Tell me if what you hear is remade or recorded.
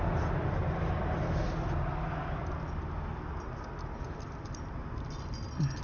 recorded